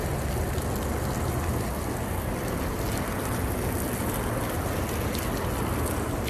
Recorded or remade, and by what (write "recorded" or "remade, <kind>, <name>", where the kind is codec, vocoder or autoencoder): recorded